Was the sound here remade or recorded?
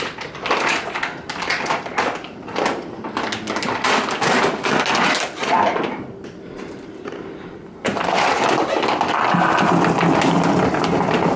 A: recorded